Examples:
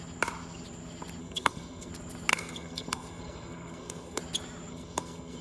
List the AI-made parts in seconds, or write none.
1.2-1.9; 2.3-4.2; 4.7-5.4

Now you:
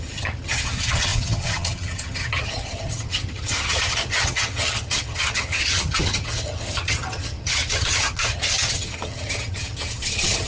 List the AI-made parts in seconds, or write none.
0.0-10.5

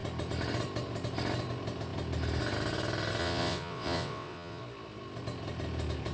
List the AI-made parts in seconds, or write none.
3.2-4.6

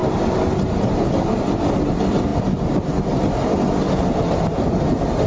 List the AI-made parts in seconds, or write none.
none